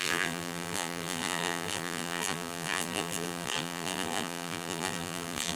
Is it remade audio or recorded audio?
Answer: remade